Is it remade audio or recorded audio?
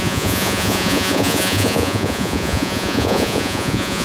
remade